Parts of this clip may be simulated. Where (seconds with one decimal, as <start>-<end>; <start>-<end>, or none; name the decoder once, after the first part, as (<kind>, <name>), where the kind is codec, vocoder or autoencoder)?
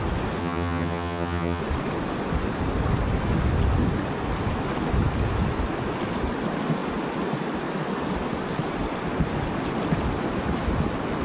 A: 0.4-1.6 (vocoder, HiFi-GAN)